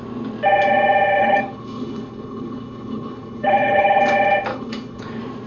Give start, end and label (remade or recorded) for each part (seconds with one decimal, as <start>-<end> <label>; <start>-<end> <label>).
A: 0.0-1.2 recorded; 1.2-4.0 remade; 4.0-4.5 recorded; 4.5-5.0 remade; 5.0-5.5 recorded